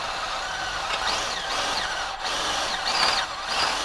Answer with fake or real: real